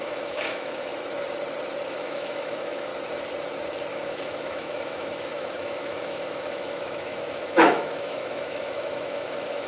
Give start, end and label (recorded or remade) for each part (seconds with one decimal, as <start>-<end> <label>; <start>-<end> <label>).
0.0-0.9 remade; 0.9-1.9 recorded; 1.9-2.9 remade; 2.9-3.9 recorded; 3.9-9.7 remade

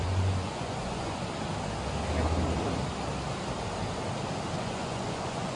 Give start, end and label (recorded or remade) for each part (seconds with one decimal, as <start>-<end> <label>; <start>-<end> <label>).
0.0-1.2 remade; 1.2-4.6 recorded; 4.6-5.6 remade

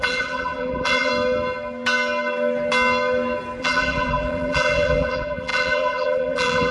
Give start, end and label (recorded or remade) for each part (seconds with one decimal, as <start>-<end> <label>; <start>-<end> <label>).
0.0-1.1 remade; 1.1-3.6 recorded; 3.6-6.7 remade

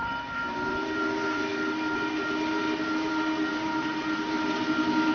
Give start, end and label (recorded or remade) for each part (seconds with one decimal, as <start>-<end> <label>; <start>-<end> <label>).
0.0-3.1 remade; 3.1-3.5 recorded; 3.5-4.6 remade; 4.6-5.1 recorded

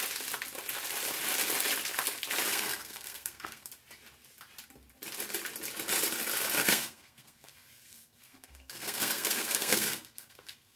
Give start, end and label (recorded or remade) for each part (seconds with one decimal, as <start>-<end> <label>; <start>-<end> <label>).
0.0-2.5 recorded; 2.5-3.7 remade; 3.7-6.6 recorded; 6.6-10.8 remade

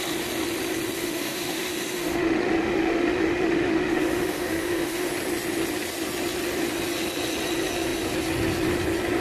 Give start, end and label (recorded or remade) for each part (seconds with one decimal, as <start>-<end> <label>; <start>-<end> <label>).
0.0-1.0 recorded; 1.0-5.1 remade; 5.1-9.2 recorded

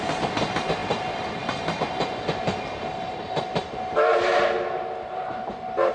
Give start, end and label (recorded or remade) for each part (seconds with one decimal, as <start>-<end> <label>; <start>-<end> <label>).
0.0-5.9 recorded

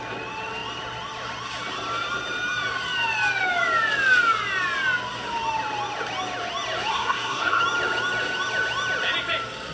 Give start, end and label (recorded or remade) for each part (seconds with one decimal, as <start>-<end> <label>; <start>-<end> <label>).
0.0-6.9 recorded; 6.9-7.6 remade; 7.6-9.7 recorded